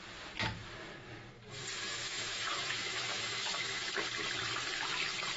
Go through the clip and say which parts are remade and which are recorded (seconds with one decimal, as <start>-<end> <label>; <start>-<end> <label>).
0.0-2.0 recorded; 2.0-3.9 remade; 3.9-5.4 recorded